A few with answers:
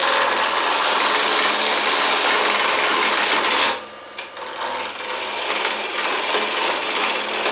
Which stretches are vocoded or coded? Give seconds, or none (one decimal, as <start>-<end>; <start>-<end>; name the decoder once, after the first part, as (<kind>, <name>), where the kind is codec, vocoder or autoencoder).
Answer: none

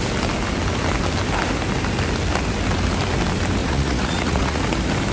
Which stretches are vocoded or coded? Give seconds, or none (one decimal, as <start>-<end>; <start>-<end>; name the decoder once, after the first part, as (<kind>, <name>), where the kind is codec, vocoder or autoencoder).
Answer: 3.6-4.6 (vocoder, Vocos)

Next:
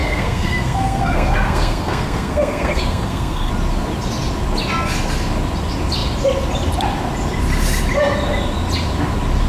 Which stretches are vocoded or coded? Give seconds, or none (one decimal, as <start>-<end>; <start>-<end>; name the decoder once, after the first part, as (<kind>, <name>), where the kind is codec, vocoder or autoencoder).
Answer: 0.0-3.5 (codec, SNAC)

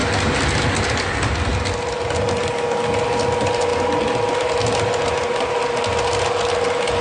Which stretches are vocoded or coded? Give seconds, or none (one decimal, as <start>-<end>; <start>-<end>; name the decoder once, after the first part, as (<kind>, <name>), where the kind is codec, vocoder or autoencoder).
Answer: none

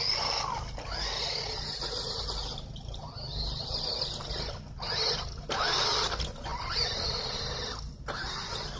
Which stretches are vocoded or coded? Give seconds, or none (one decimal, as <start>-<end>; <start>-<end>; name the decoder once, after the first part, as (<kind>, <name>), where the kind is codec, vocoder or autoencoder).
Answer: none

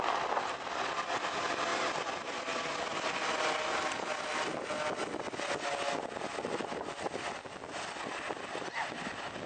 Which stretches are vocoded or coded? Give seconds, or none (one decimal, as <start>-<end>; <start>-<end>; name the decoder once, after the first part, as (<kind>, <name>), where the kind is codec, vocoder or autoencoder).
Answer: none

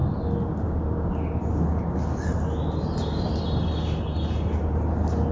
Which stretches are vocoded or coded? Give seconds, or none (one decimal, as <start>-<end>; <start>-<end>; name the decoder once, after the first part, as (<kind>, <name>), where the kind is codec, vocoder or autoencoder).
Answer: none